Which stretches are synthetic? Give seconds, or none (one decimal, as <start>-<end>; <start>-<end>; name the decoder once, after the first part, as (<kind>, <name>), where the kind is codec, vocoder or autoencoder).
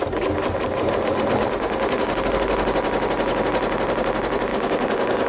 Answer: 4.5-5.3 (codec, DAC)